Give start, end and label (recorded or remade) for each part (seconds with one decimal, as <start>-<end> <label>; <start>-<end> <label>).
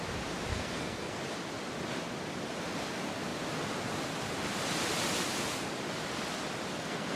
0.0-0.5 recorded; 0.5-1.2 remade; 1.2-6.7 recorded; 6.7-7.2 remade